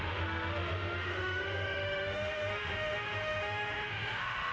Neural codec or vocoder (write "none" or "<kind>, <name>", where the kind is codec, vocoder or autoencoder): autoencoder, DAC-VAE